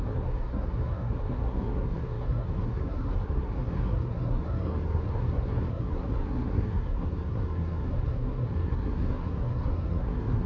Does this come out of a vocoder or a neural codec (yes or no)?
yes